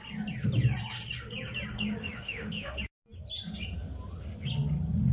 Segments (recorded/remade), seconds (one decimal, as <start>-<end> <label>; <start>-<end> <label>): 0.0-2.0 recorded; 2.0-2.8 remade; 2.8-5.1 recorded